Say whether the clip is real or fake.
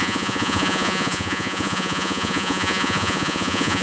fake